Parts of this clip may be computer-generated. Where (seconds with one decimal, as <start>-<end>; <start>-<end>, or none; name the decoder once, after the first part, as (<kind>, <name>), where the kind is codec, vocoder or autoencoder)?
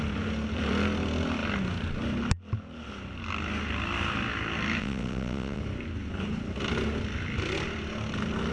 4.8-5.6 (vocoder, WaveNeXt)